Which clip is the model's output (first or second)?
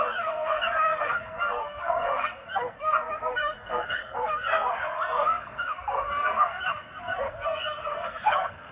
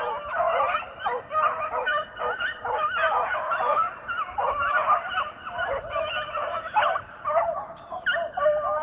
first